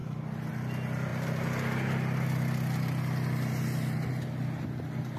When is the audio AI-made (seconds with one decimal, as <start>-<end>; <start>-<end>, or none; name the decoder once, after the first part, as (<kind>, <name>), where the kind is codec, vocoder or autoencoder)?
none